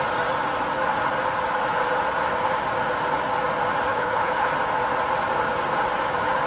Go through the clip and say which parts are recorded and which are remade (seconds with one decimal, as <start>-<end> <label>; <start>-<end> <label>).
0.0-3.9 recorded; 3.9-4.5 remade; 4.5-6.5 recorded